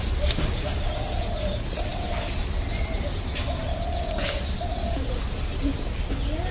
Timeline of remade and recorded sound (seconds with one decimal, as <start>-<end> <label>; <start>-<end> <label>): 0.0-6.5 recorded